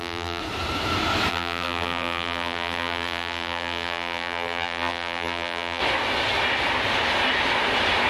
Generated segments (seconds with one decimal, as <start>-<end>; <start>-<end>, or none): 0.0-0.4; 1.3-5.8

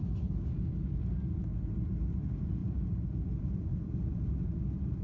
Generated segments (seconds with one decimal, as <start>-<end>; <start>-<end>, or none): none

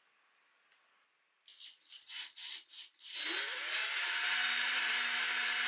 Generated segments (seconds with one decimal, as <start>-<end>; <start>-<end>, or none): 1.5-4.9

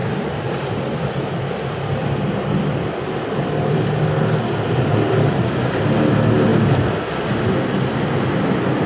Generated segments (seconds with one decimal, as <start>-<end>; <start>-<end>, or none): none

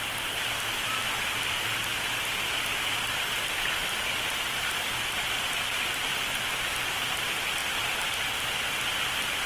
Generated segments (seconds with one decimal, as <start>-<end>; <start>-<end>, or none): none

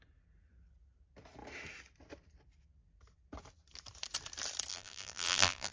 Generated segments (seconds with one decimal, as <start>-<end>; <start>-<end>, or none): 4.7-5.7